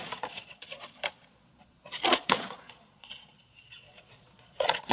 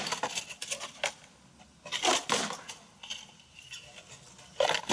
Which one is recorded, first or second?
second